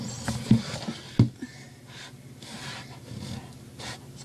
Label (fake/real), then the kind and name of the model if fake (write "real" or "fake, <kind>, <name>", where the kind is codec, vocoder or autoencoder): real